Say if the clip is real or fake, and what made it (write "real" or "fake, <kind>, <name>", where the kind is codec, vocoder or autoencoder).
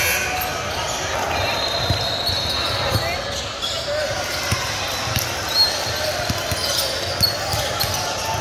real